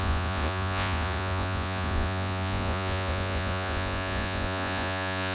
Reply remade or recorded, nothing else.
remade